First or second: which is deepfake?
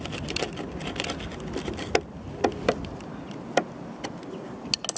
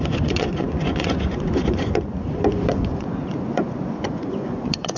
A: second